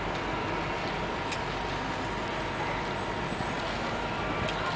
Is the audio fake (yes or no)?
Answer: no